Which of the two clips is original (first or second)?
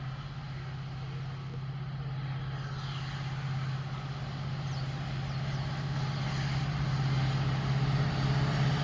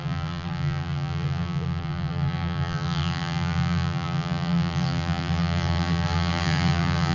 first